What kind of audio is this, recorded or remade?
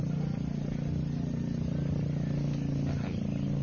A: recorded